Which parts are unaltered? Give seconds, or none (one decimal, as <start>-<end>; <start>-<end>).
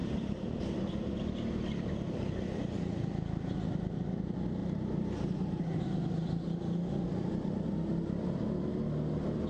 1.1-4.6; 6.0-9.5